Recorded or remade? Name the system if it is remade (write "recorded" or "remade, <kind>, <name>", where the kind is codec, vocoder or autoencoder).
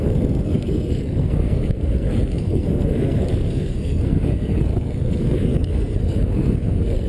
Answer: remade, codec, SNAC